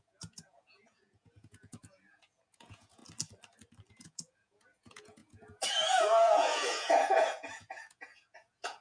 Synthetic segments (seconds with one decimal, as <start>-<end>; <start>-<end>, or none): 0.0-3.0; 3.9-8.8